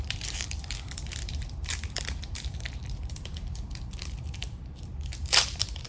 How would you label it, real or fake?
fake